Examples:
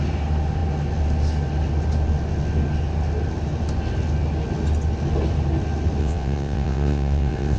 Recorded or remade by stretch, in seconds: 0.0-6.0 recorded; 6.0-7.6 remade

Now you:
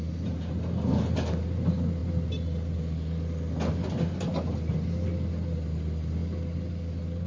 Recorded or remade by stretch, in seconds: 0.0-7.3 recorded